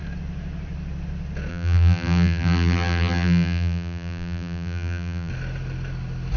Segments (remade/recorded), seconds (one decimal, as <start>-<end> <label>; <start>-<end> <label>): 0.0-1.5 recorded; 1.5-5.3 remade; 5.3-6.4 recorded